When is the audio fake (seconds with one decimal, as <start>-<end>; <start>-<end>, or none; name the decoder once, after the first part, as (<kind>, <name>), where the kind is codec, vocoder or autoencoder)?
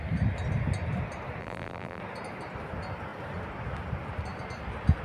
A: 1.4-2.0 (vocoder, BigVGAN v2)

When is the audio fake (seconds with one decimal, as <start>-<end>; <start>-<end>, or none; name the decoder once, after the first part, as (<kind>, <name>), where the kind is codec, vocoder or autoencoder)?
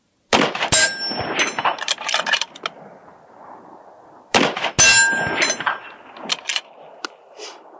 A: none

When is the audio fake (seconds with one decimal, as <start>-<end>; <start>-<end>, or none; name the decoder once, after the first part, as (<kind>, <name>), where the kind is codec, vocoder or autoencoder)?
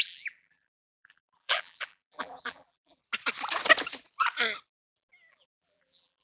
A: 0.0-3.0 (vocoder, BigVGAN v2); 5.3-6.2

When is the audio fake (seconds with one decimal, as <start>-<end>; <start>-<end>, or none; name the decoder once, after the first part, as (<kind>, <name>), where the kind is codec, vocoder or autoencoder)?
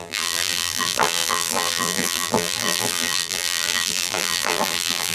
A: 0.0-5.1 (vocoder, BigVGAN v2)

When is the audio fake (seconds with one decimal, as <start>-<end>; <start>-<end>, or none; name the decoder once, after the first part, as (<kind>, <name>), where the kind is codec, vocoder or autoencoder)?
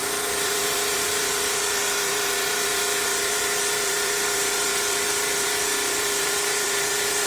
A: 0.0-7.3 (vocoder, BigVGAN v2)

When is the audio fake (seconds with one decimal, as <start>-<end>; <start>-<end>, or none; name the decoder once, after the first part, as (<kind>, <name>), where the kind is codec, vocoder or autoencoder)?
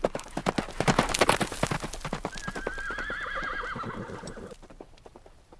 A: 0.0-0.4 (vocoder, BigVGAN v2); 3.8-5.6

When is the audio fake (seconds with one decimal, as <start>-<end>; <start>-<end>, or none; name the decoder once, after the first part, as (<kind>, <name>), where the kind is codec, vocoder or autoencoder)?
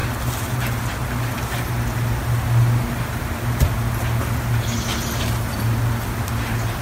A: none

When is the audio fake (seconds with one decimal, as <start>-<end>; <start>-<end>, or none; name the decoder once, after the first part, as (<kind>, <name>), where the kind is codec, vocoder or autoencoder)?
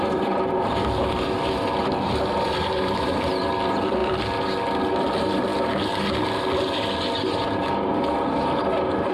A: 0.0-4.0 (vocoder, BigVGAN v2); 4.9-5.5